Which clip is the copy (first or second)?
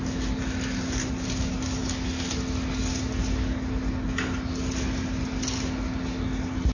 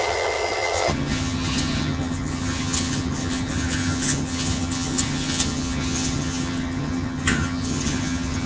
second